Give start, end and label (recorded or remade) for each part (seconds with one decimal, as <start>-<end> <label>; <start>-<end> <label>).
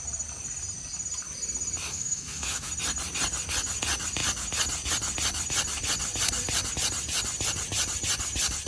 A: 0.0-1.9 recorded; 1.9-2.7 remade; 2.7-8.7 recorded